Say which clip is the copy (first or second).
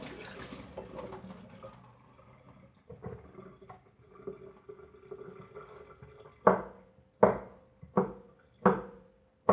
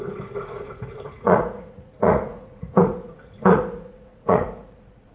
second